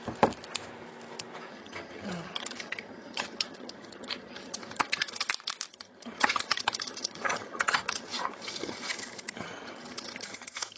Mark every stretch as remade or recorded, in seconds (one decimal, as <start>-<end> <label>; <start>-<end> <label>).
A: 0.0-1.5 recorded; 1.5-5.3 remade; 5.3-5.7 recorded; 5.7-10.8 remade